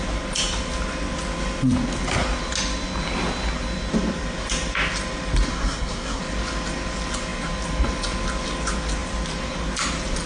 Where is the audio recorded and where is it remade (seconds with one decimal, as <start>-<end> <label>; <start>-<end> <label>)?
0.0-5.5 recorded; 5.5-6.2 remade; 6.2-10.3 recorded